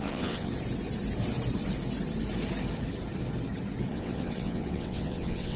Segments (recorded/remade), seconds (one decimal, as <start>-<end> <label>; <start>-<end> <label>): 0.0-0.5 remade; 0.5-3.9 recorded; 3.9-5.6 remade